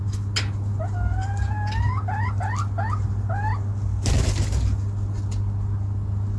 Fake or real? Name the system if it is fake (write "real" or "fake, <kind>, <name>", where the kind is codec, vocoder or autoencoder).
real